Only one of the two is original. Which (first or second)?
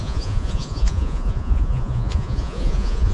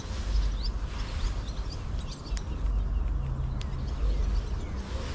second